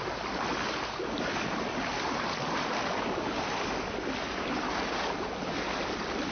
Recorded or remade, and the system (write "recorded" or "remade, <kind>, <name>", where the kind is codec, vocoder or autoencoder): recorded